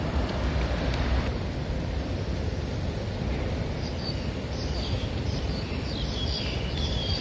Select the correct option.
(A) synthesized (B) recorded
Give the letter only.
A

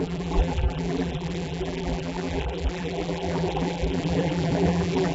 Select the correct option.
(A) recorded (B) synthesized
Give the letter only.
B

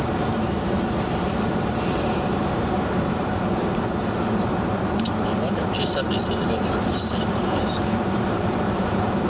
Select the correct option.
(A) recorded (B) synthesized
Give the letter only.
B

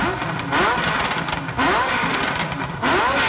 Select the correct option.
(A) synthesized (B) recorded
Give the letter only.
B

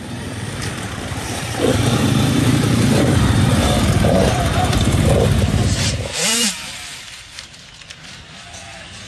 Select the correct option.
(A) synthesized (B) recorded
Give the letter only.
A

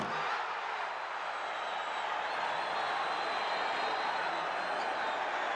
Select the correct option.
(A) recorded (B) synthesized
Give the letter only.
A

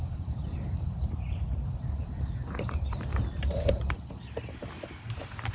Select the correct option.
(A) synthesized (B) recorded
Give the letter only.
A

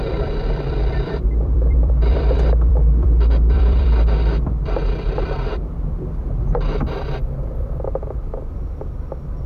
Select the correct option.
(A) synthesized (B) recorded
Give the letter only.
A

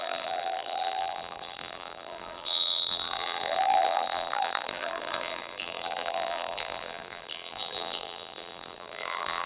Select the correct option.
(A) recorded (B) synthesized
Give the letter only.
B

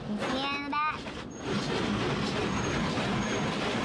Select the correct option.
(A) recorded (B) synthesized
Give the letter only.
A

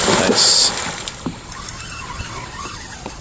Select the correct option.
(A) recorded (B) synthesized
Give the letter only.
B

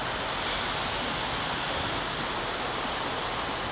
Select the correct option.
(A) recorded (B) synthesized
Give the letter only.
A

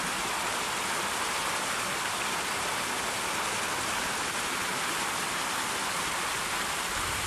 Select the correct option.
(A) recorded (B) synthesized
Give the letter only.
A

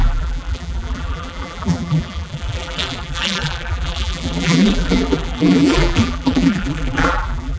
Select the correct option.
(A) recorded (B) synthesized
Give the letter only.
B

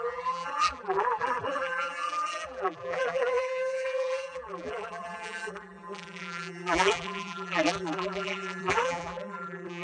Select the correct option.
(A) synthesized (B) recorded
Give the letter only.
A